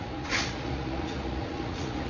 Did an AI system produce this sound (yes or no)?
yes